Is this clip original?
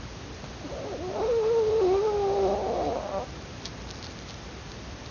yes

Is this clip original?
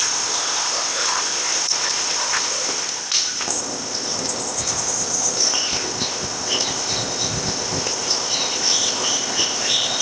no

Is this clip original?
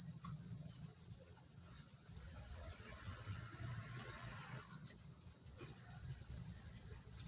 no